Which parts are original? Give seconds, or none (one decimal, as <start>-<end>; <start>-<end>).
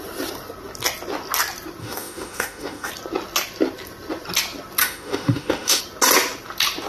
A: 0.0-1.8; 2.9-4.8; 5.8-6.9